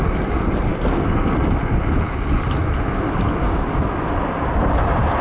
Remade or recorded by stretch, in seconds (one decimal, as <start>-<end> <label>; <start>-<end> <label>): 0.0-5.2 recorded